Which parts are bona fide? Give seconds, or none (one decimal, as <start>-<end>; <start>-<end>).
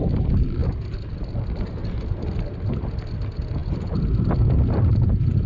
0.0-5.5